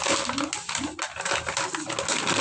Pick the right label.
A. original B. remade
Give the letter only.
A